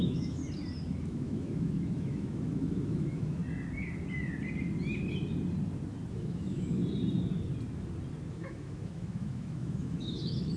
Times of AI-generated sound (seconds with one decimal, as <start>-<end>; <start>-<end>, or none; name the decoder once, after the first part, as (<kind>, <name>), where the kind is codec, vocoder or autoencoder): 0.0-0.4 (autoencoder, DAC-VAE); 1.0-3.4; 6.1-6.8; 8.3-10.6